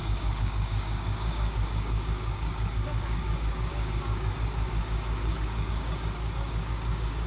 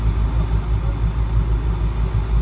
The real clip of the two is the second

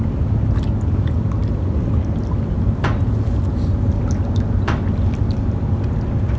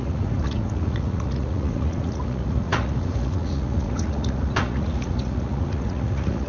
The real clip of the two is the first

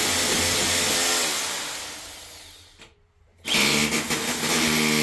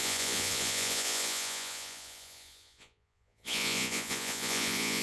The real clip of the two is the first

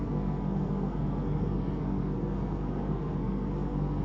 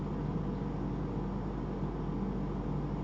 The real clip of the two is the second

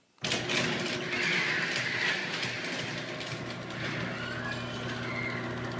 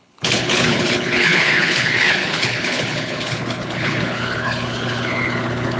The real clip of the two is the first